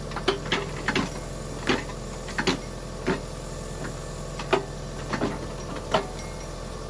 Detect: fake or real real